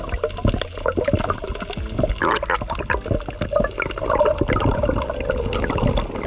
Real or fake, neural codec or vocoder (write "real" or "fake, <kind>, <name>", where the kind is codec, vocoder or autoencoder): real